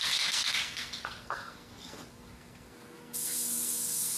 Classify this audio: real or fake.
fake